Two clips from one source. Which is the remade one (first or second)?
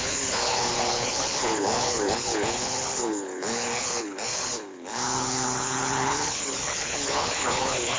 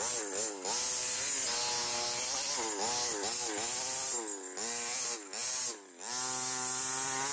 first